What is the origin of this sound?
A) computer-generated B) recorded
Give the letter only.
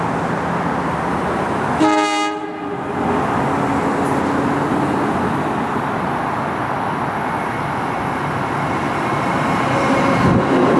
B